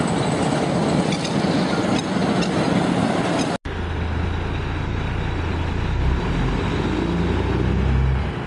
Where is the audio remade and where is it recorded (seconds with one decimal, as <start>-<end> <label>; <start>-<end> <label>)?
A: 0.0-8.5 recorded